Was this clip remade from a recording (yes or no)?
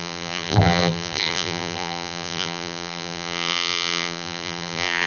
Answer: yes